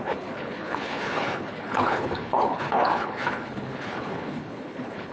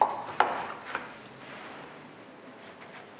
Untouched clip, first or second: second